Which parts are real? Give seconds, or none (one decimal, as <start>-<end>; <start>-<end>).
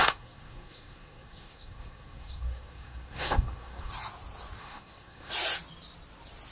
3.9-4.6; 5.3-6.5